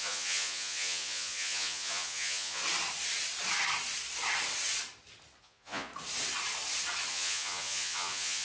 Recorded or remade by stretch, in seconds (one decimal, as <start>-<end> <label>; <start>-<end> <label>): 0.0-2.6 remade; 2.6-5.4 recorded; 5.4-5.9 remade; 5.9-7.1 recorded; 7.1-8.4 remade